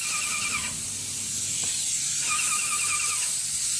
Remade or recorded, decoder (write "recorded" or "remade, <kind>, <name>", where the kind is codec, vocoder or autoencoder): recorded